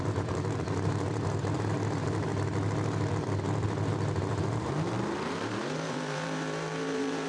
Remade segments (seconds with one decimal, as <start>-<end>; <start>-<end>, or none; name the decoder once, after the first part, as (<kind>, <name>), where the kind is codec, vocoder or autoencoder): 0.0-2.3 (vocoder, BigVGAN v2); 4.3-7.3